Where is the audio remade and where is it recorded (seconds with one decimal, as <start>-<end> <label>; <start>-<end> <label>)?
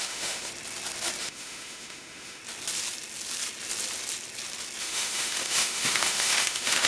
0.0-0.5 remade; 0.5-1.2 recorded; 1.2-2.4 remade; 2.4-4.8 recorded; 4.8-6.9 remade